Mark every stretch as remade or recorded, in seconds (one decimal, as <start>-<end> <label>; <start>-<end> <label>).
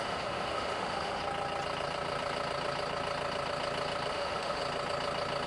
0.0-1.2 remade; 1.2-4.1 recorded; 4.1-4.6 remade; 4.6-5.5 recorded